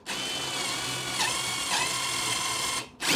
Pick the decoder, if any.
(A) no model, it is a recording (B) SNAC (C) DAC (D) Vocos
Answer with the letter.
A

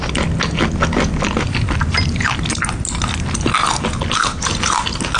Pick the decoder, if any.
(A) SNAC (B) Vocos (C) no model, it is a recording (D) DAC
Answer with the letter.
C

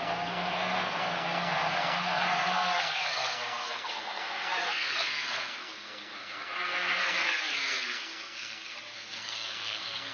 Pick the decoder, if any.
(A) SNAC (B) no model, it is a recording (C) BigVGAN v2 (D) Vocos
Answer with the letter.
A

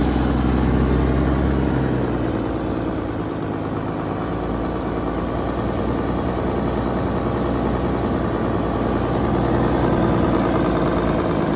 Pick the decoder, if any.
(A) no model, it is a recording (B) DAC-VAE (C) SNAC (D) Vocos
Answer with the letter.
A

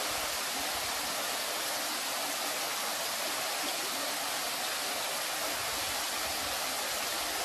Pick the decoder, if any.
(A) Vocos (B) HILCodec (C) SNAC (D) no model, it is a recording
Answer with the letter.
D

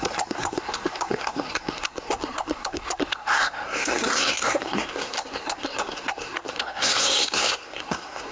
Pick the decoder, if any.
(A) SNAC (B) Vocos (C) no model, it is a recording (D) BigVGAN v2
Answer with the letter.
A